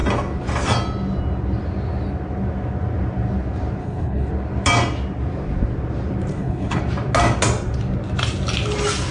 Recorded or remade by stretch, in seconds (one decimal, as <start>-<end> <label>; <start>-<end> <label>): 0.0-3.8 recorded; 3.8-4.3 remade; 4.3-6.3 recorded; 6.3-6.8 remade; 6.8-9.1 recorded